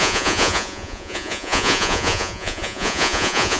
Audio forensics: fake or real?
fake